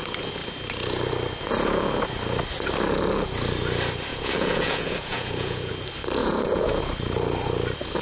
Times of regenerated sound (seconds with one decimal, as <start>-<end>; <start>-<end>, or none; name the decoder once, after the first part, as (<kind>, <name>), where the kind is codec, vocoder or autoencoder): 4.1-5.7 (vocoder, Vocos); 6.2-6.7